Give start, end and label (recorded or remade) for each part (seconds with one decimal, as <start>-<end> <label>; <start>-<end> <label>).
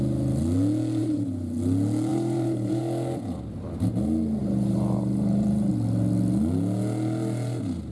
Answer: 0.0-1.0 recorded; 1.0-1.6 remade; 1.6-2.1 recorded; 2.1-2.8 remade; 2.8-4.4 recorded; 4.4-5.7 remade; 5.7-7.9 recorded